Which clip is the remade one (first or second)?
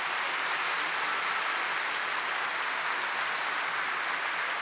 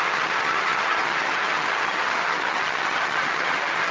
second